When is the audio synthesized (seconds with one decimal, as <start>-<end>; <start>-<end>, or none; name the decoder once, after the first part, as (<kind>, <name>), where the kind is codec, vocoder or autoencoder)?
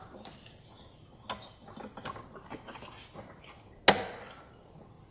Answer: none